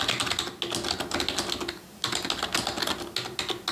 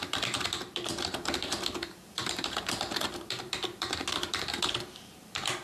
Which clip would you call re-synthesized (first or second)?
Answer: second